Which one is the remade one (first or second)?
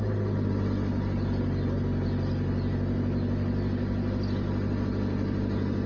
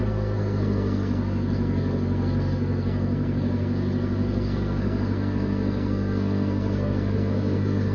second